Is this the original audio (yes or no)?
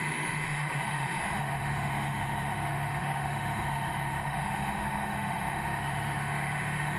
no